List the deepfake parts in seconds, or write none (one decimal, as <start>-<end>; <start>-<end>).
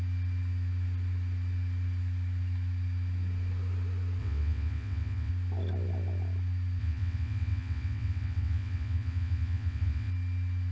4.2-5.3; 6.8-10.1